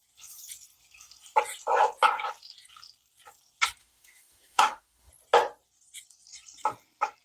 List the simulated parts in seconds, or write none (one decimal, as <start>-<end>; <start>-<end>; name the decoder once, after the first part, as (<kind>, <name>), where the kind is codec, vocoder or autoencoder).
3.8-5.1 (autoencoder, DAC-VAE)